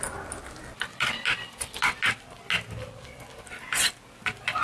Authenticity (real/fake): real